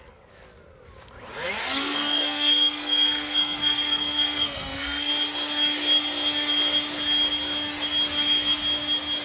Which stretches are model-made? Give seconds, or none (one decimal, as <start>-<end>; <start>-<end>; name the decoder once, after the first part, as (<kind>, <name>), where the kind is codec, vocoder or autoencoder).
1.6-5.1 (codec, SNAC)

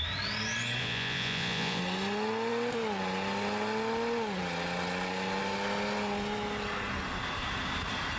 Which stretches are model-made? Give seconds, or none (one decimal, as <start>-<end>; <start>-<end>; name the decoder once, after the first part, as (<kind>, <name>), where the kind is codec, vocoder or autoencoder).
0.8-1.8 (vocoder, Vocos)

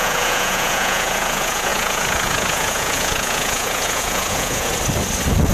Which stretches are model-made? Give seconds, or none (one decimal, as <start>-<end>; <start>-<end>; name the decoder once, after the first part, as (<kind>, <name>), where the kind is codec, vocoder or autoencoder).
0.0-4.7 (vocoder, Vocos)

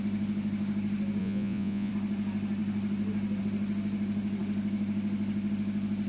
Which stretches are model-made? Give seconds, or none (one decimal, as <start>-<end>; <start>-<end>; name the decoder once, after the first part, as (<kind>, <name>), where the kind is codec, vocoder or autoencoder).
1.2-1.9 (vocoder, Vocos)

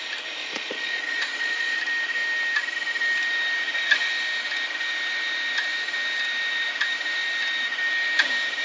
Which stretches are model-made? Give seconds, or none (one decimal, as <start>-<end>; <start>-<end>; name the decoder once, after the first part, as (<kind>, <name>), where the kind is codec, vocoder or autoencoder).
0.4-1.8 (vocoder, Vocos)